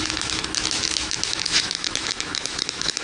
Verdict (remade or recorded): remade